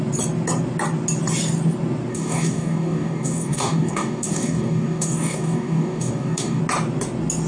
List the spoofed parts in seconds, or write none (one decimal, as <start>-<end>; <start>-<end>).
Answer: 2.1-6.6